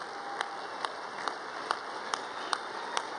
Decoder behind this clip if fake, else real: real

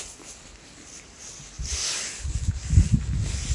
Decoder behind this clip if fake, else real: real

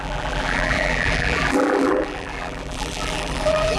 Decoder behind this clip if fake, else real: fake, vocoder, BigVGAN v2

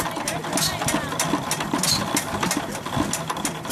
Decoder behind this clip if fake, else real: real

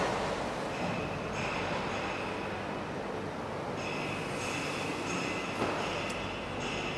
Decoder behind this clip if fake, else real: real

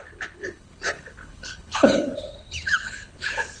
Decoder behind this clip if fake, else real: fake, codec, HILCodec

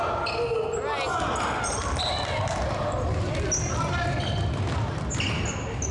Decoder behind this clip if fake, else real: real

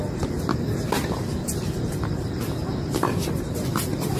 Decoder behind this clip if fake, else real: fake, vocoder, BigVGAN v2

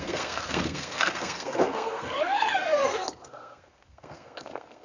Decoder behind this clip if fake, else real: fake, codec, SNAC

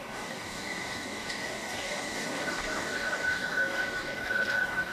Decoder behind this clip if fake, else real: fake, codec, DAC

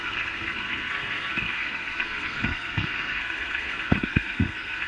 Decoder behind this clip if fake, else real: fake, codec, SNAC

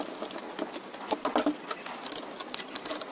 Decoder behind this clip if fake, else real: real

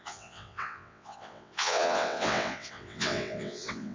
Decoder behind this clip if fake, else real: fake, vocoder, WaveNeXt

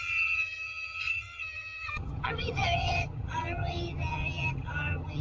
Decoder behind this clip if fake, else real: fake, vocoder, HiFi-GAN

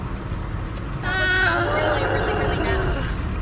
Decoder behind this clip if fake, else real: real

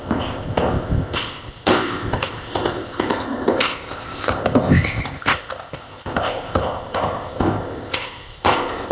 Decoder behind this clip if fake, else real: fake, codec, ZipCodec